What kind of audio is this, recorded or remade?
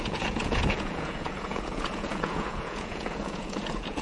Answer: remade